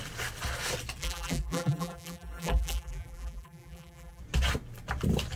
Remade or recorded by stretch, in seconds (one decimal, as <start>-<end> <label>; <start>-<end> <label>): 0.0-1.0 recorded; 1.0-4.2 remade; 4.2-5.4 recorded